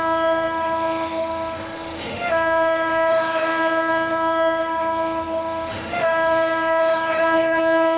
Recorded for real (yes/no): no